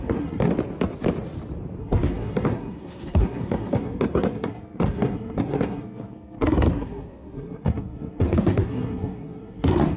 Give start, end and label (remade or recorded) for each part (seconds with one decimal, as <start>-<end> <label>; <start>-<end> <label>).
0.0-0.5 remade; 0.5-1.8 recorded; 1.8-10.0 remade